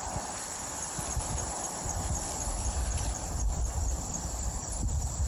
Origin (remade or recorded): remade